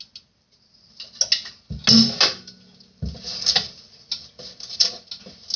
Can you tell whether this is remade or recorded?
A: recorded